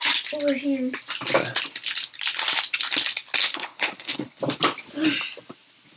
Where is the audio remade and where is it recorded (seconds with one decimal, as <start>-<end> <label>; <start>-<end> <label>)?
0.0-3.4 recorded; 3.4-4.4 remade; 4.4-6.0 recorded